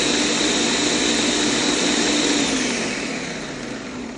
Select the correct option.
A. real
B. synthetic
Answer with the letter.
A